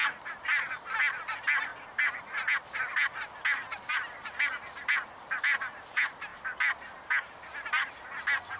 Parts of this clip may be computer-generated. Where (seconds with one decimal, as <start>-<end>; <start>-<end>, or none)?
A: none